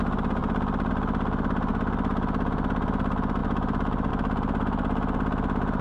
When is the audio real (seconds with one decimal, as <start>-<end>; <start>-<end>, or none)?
0.0-3.4; 4.1-5.8